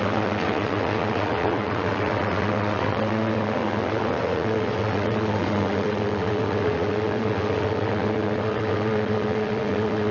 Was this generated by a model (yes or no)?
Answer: yes